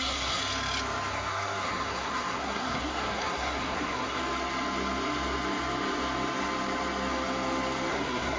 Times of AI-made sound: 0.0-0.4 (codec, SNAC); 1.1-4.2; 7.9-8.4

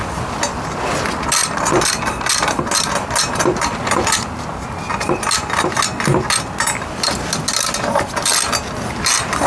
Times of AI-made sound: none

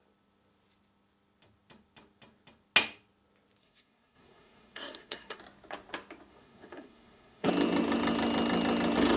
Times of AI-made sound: 3.6-5.4 (codec, SNAC); 6.3-7.5

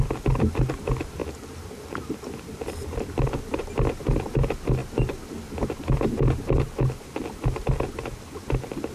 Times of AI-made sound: 1.2-3.7 (vocoder, BigVGAN v2)